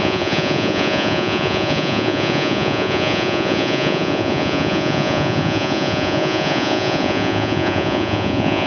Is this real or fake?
fake